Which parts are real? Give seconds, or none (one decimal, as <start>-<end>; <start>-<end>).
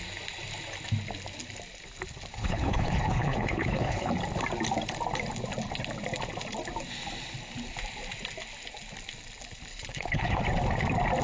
0.0-2.3; 4.1-9.7; 10.4-11.2